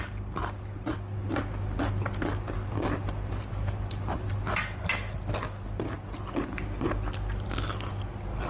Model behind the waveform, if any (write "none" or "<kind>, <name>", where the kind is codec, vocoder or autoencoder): none